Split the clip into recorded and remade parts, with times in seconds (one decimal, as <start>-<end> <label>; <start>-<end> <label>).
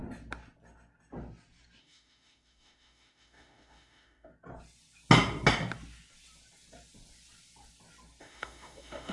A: 0.0-1.8 recorded; 1.8-4.3 remade; 4.3-8.2 recorded; 8.2-9.1 remade